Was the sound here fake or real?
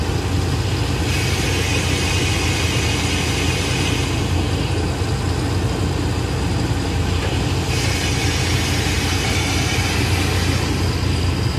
real